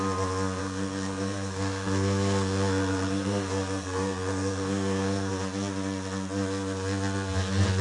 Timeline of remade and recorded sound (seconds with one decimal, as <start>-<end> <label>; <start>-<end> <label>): 0.0-0.6 recorded; 0.6-5.3 remade; 5.3-7.8 recorded